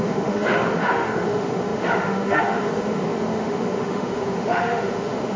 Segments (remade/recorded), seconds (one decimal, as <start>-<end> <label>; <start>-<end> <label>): 0.0-5.4 remade